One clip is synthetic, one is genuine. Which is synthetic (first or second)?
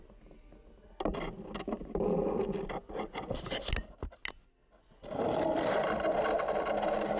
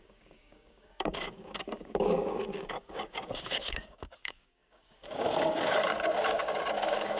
second